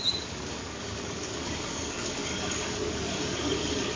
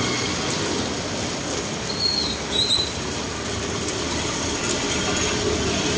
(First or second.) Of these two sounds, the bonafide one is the second